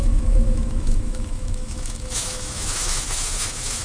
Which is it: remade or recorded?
remade